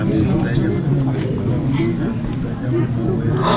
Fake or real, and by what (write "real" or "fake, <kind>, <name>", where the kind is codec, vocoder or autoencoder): real